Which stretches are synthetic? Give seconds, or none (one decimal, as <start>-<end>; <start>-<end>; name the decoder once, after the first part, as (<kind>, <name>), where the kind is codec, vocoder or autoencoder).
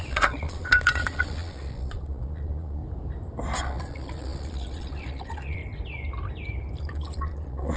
0.0-2.8 (vocoder, Vocos); 3.6-5.6; 6.8-7.8